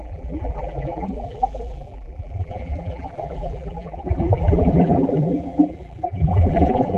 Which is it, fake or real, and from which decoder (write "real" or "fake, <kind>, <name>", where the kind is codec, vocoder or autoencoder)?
fake, vocoder, BigVGAN v2